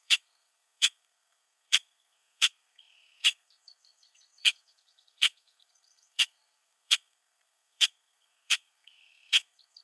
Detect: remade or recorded remade